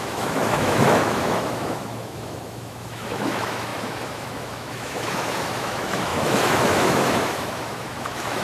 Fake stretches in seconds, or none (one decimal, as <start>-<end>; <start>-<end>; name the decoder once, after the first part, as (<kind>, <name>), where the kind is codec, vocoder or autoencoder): 0.0-8.4 (autoencoder, DAC-VAE)